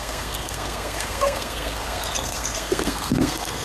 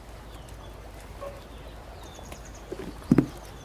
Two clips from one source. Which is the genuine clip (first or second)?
second